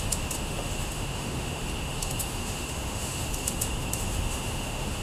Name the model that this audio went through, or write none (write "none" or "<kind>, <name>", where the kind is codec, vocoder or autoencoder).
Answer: autoencoder, DAC-VAE